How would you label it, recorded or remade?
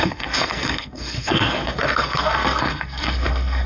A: remade